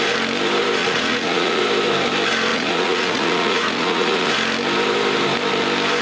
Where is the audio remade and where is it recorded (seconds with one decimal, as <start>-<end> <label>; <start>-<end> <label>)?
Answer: 0.0-0.8 recorded; 0.8-1.6 remade; 1.6-2.5 recorded; 2.5-4.3 remade; 4.3-6.0 recorded